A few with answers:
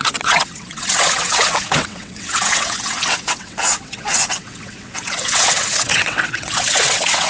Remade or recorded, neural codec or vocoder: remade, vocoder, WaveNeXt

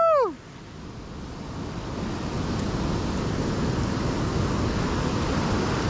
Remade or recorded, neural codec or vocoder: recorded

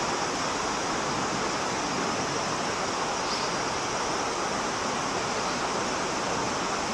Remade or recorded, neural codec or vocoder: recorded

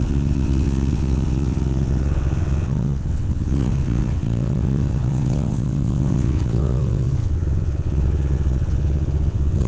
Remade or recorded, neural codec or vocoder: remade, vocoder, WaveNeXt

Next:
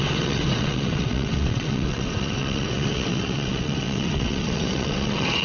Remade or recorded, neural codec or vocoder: remade, vocoder, WaveNeXt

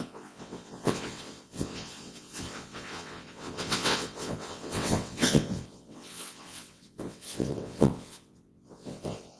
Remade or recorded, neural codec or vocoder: remade, vocoder, WaveNeXt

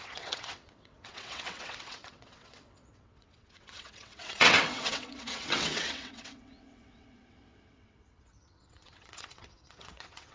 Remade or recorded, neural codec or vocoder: remade, vocoder, WaveNeXt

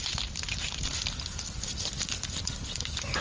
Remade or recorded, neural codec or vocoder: recorded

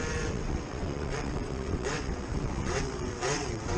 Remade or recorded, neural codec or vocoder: remade, vocoder, WaveNeXt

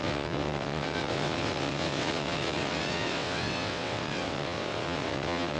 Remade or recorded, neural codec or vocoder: remade, vocoder, WaveNeXt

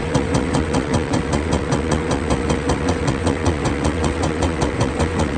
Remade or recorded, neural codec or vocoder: remade, vocoder, WaveNeXt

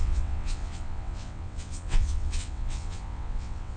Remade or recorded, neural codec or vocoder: remade, vocoder, WaveNeXt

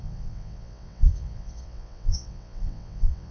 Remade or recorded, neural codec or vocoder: remade, vocoder, WaveNeXt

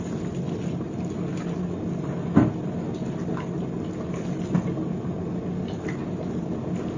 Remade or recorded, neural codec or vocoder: recorded